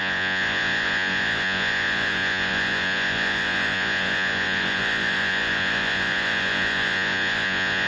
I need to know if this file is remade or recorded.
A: remade